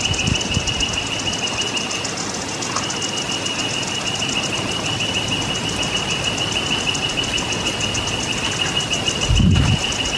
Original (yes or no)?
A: yes